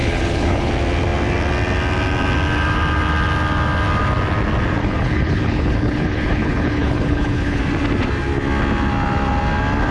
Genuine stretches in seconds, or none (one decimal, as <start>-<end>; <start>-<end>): 0.7-4.8; 7.6-9.9